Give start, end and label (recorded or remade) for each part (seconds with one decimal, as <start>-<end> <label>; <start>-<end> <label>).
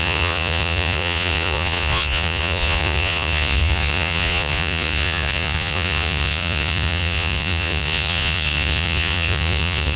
0.0-10.0 remade